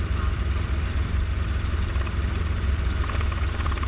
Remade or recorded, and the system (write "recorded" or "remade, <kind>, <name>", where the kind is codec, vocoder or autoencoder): remade, vocoder, BigVGAN v2